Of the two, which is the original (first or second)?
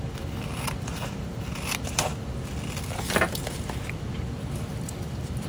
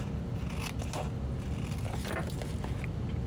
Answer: second